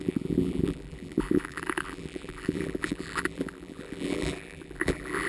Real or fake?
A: fake